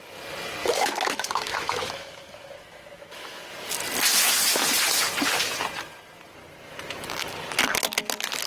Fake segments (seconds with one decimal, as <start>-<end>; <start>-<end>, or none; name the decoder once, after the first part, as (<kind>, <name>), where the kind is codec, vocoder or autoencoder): 0.6-3.4 (autoencoder, DAC-VAE)